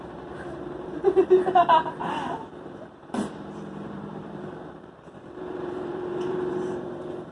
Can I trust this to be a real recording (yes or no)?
no